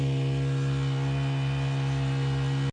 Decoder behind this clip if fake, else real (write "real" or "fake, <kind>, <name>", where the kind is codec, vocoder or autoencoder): real